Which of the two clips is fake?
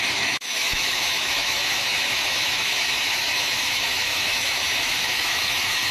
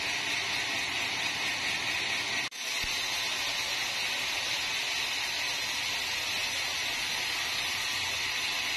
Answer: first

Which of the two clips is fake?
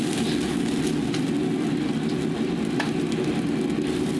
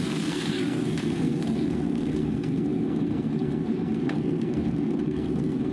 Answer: second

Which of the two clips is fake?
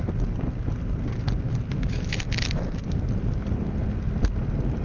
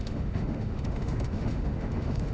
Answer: second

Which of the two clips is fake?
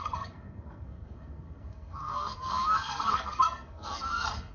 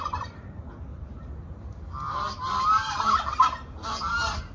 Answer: first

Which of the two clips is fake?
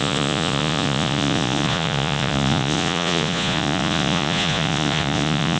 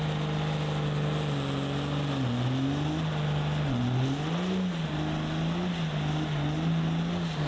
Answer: first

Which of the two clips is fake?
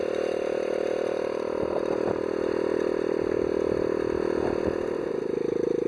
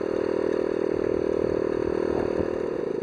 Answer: second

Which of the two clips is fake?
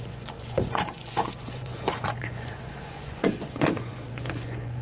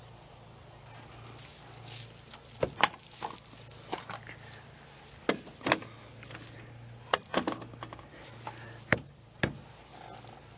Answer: first